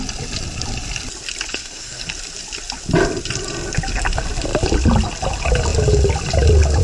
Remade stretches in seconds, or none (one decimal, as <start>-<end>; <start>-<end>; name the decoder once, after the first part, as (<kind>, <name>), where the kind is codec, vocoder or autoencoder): 1.5-2.1 (codec, SNAC)